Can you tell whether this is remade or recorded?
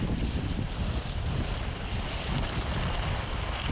remade